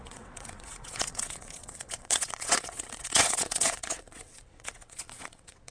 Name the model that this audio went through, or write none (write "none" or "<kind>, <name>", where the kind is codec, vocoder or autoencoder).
vocoder, WaveNeXt